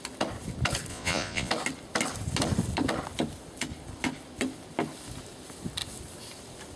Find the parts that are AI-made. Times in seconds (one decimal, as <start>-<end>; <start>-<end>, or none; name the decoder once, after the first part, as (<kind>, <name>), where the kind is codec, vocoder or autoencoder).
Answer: 0.9-1.5 (vocoder, Vocos)